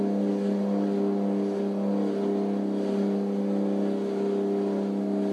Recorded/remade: recorded